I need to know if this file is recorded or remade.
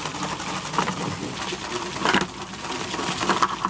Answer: recorded